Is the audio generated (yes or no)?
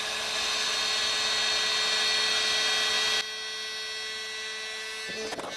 no